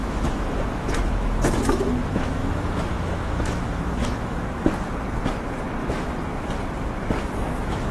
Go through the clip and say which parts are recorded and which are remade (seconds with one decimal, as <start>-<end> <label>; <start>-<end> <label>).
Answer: 0.0-4.7 remade; 4.7-5.8 recorded; 5.8-6.5 remade; 6.5-7.0 recorded; 7.0-7.9 remade